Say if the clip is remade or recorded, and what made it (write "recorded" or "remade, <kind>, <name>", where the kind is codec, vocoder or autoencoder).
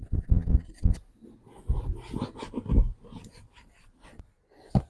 recorded